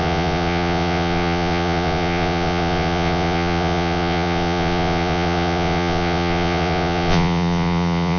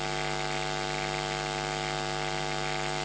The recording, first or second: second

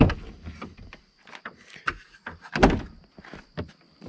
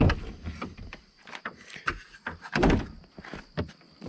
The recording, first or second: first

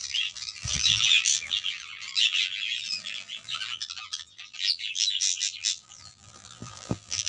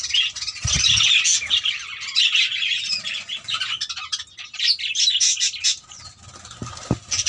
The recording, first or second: second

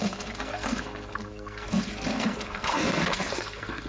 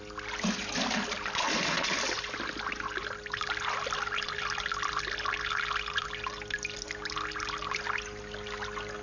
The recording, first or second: second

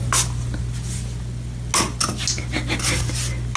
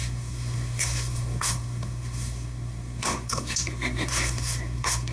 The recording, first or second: first